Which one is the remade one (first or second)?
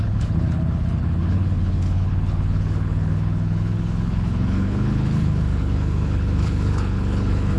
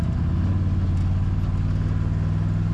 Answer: first